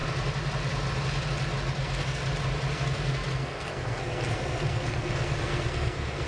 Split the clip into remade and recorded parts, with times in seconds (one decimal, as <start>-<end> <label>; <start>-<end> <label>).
0.0-1.8 recorded; 1.8-2.2 remade; 2.2-2.7 recorded; 2.7-6.3 remade